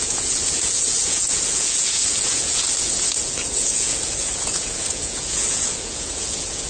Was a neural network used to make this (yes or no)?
yes